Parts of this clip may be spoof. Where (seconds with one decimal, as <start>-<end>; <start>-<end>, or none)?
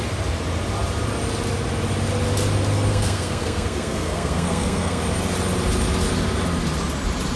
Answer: 2.9-5.0